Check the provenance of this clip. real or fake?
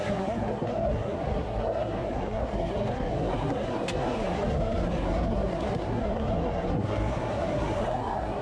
fake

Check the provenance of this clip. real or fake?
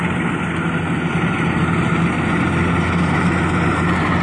real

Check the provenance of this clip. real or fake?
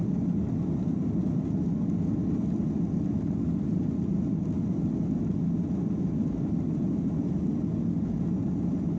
real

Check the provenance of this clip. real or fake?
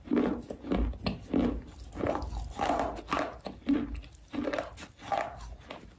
real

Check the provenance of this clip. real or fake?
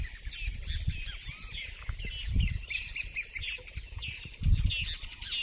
real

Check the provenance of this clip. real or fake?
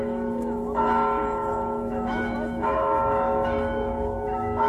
fake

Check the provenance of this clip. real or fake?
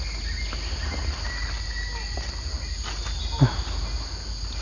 real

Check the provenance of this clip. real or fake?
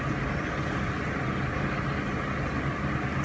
real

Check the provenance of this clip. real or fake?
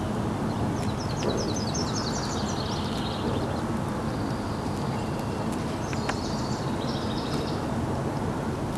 real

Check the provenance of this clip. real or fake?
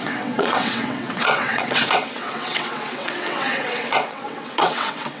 fake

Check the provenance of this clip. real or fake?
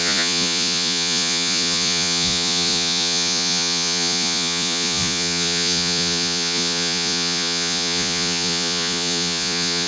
fake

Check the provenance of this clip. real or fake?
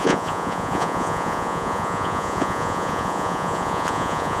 fake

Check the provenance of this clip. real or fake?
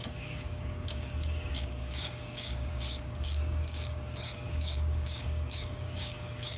fake